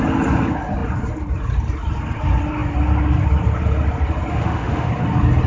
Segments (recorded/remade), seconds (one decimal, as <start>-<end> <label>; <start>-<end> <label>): 0.0-4.3 recorded; 4.3-4.9 remade; 4.9-5.5 recorded